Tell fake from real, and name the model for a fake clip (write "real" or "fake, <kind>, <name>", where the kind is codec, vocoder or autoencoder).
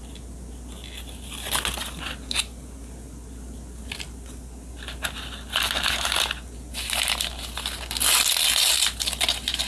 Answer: real